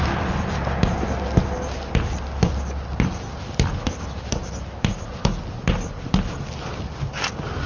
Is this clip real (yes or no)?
yes